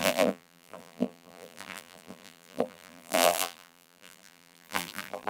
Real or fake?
fake